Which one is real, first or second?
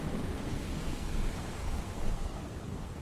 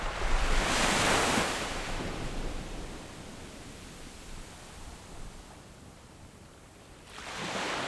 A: second